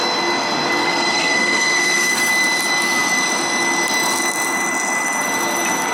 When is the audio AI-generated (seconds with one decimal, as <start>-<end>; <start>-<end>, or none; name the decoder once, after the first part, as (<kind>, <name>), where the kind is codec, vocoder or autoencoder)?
0.8-2.3 (codec, SNAC)